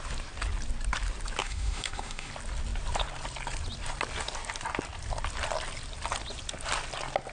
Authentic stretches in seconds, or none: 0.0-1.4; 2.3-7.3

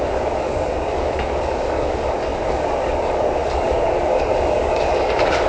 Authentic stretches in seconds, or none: none